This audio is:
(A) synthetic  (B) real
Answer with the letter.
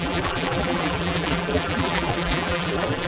A